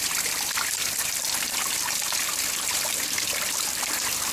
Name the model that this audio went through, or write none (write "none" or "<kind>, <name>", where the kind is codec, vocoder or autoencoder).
vocoder, BigVGAN v2